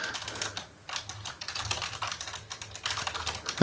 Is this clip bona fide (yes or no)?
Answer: yes